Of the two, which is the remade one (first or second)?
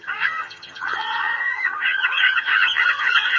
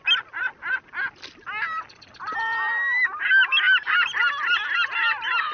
first